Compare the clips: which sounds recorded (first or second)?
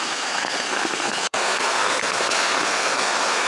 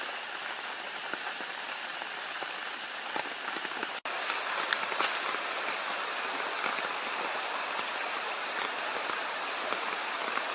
second